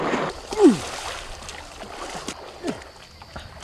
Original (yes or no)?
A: yes